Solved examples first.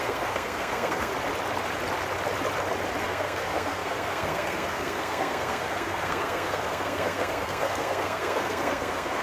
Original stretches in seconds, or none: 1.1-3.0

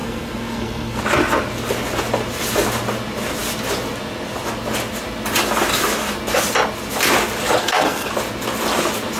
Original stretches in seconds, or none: 1.0-7.6; 8.1-9.2

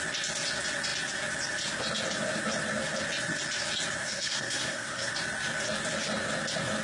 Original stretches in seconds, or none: 0.0-4.0; 5.1-6.8

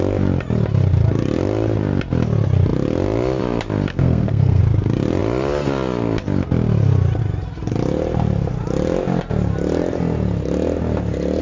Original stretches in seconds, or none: 0.0-3.9; 4.6-11.4

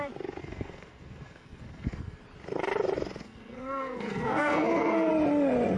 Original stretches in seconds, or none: 0.0-0.4; 2.2-3.2; 5.1-5.8

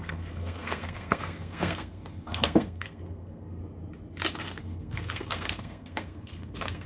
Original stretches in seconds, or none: 3.6-4.4

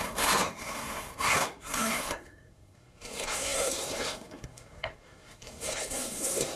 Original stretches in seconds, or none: none